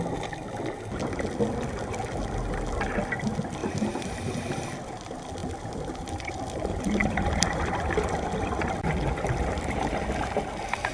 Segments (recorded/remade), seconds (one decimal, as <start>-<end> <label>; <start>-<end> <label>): 0.0-3.6 recorded; 3.6-4.4 remade; 4.4-5.4 recorded; 5.4-6.1 remade; 6.1-7.0 recorded; 7.0-9.9 remade; 9.9-10.9 recorded